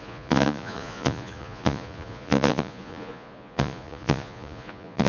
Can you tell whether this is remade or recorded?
remade